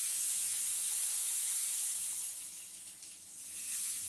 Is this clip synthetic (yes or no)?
yes